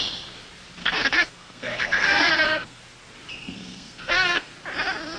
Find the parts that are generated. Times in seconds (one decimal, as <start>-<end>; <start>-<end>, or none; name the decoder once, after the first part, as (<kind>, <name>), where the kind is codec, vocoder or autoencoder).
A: 0.8-2.8 (codec, SNAC); 3.4-4.5